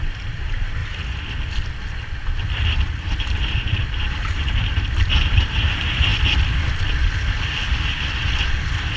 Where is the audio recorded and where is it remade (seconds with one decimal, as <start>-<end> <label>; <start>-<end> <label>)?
0.0-0.8 remade; 0.8-2.7 recorded; 2.7-6.1 remade; 6.1-9.0 recorded